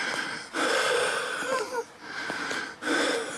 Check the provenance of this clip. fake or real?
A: real